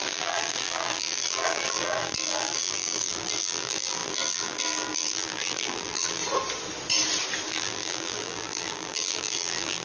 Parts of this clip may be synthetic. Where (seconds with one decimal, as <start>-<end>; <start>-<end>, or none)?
0.0-6.2; 7.5-9.8

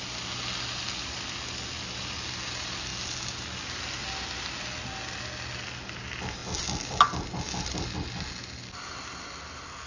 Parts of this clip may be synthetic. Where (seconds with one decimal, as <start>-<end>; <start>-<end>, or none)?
none

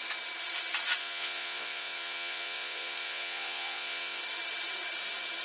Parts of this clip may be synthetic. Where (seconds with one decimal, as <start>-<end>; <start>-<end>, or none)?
1.0-4.2

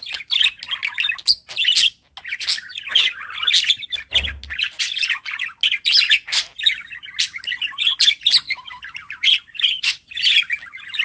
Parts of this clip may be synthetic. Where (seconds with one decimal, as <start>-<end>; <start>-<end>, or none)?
none

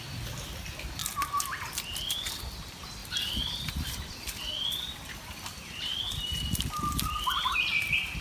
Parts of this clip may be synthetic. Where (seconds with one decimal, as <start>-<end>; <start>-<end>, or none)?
3.0-7.5

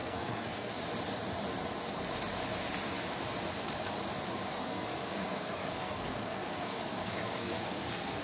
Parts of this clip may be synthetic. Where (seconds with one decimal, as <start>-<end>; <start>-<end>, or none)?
0.0-0.8; 4.5-8.2